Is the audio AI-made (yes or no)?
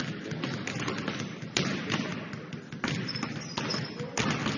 no